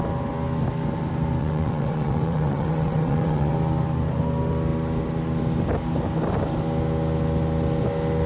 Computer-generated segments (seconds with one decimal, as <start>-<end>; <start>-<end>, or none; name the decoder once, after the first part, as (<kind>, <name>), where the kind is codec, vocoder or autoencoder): 1.4-3.5 (vocoder, WaveNeXt)